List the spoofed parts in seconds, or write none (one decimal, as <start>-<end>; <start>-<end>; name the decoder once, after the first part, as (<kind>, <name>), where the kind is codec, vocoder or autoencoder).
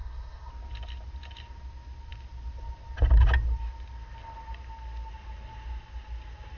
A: 0.0-0.5 (codec, SNAC)